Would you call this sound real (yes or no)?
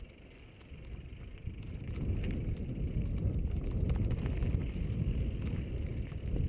yes